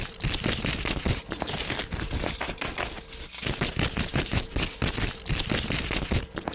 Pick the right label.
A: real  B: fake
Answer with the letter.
A